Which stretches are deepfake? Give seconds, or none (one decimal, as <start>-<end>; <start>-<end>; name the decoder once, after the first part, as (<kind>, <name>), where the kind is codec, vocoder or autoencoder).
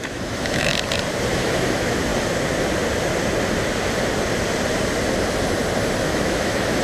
0.0-0.7 (autoencoder, DAC-VAE); 1.3-2.1; 6.0-6.8